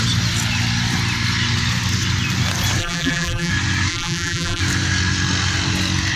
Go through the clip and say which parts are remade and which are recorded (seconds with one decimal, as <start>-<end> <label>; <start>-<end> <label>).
0.0-2.8 recorded; 2.8-3.5 remade; 3.5-3.9 recorded; 3.9-4.6 remade; 4.6-6.2 recorded

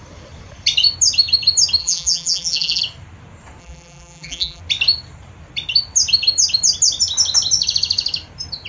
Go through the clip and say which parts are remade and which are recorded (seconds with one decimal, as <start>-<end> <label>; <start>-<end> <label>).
0.0-1.8 recorded; 1.8-2.8 remade; 2.8-3.6 recorded; 3.6-4.6 remade; 4.6-8.7 recorded

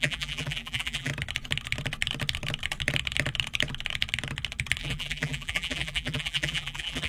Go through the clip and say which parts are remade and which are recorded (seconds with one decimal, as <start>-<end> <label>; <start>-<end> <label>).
0.0-1.1 remade; 1.1-4.8 recorded; 4.8-7.1 remade

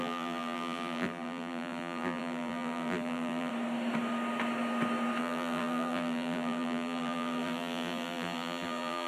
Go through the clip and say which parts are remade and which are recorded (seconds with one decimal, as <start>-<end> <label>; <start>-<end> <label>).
0.0-3.5 remade; 3.5-5.2 recorded; 5.2-9.1 remade

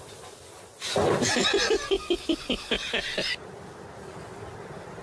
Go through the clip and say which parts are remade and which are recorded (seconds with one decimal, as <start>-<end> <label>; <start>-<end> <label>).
0.0-1.4 recorded; 1.4-2.7 remade; 2.7-5.0 recorded

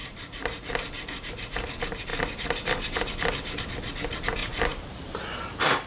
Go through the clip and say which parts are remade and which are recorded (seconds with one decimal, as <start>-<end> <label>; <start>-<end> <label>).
0.0-0.7 remade; 0.7-4.4 recorded; 4.4-5.2 remade; 5.2-5.9 recorded

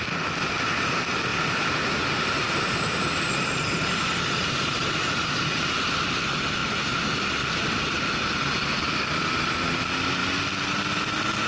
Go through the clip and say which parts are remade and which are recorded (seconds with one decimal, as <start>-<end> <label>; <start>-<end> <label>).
0.0-1.3 recorded; 1.3-5.8 remade; 5.8-11.5 recorded